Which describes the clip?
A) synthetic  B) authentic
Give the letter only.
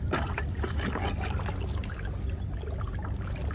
B